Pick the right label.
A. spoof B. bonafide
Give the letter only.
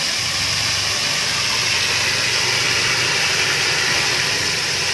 B